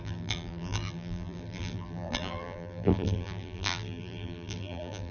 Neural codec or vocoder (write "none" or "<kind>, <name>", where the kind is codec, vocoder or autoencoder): vocoder, BigVGAN v2